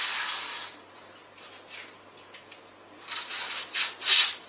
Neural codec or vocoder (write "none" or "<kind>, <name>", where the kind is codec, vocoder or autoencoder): none